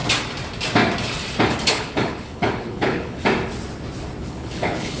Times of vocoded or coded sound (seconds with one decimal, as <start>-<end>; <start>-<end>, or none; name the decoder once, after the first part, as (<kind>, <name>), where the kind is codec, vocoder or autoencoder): 1.7-3.2 (codec, HILCodec); 4.2-5.0